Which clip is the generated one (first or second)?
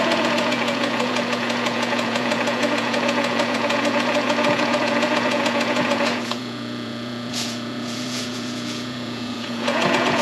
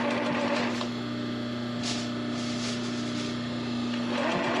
first